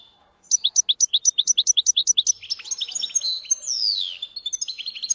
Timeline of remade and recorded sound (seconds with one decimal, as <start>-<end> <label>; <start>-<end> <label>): 0.0-5.1 recorded